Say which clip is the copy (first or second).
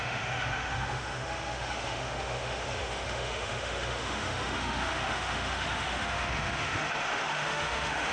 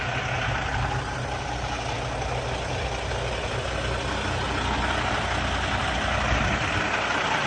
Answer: first